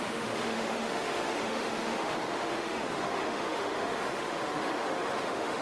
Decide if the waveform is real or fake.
fake